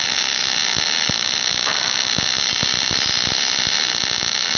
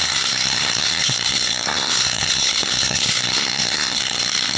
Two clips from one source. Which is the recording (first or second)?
first